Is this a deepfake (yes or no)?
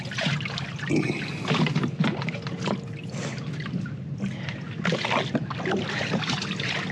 no